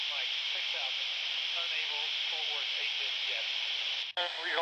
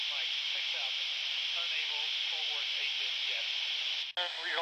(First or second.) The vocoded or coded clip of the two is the first